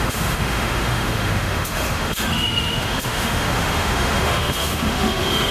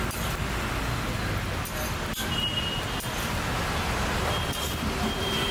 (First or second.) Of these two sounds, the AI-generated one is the first